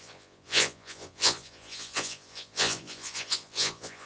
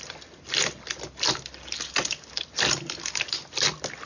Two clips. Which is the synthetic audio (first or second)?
first